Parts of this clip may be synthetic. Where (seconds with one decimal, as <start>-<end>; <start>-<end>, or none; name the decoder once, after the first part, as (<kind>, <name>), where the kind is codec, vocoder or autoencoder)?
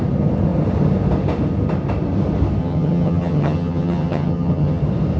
2.6-4.8 (vocoder, HiFi-GAN)